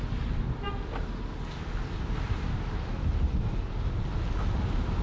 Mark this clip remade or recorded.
recorded